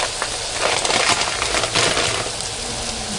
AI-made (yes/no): no